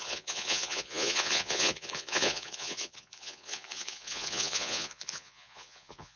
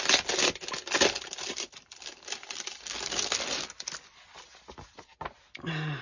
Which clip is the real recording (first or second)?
second